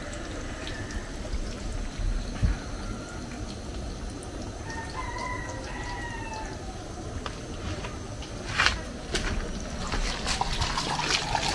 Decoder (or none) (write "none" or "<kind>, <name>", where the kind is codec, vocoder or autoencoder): none